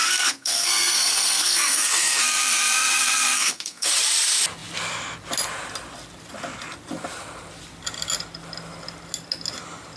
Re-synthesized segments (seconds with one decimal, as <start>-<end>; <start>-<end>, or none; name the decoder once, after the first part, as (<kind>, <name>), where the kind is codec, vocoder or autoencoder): 0.0-3.9 (codec, SNAC)